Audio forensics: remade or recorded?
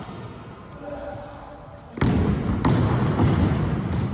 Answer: recorded